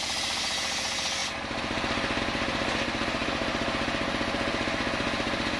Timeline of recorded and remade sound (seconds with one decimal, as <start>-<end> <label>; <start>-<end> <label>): 0.0-5.6 recorded